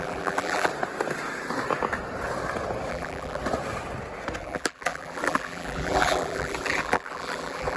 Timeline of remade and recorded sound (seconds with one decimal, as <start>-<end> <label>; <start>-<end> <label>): 0.0-0.7 remade; 0.7-2.9 recorded; 2.9-3.4 remade; 3.4-4.4 recorded; 4.4-7.8 remade